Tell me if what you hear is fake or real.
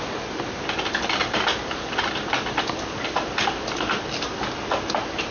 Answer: real